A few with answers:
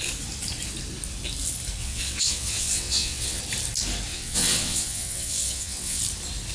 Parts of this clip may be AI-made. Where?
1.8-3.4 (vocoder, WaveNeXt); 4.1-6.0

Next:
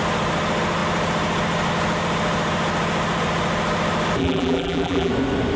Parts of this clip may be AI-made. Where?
4.2-5.1 (vocoder, BigVGAN v2)

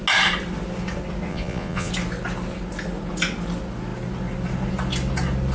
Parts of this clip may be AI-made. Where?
1.3-1.9 (vocoder, Vocos)